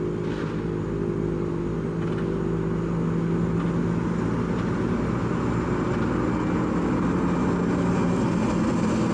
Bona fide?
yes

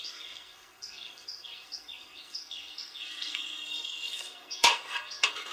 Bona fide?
no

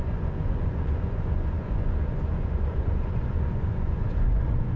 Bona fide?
no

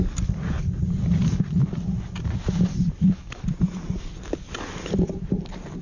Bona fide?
no